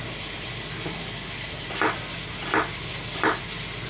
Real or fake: real